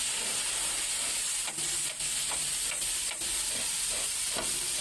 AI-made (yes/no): no